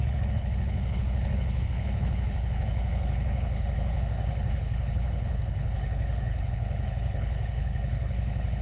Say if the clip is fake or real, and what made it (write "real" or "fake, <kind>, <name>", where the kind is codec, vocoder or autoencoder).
fake, codec, HILCodec